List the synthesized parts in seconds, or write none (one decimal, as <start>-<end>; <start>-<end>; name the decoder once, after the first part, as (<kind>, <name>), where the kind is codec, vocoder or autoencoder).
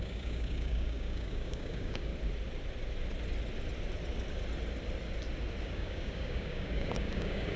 0.0-2.1 (codec, DAC); 5.6-7.6